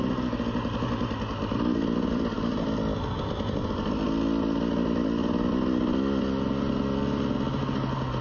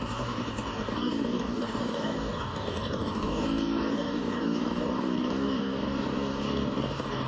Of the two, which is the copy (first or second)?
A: second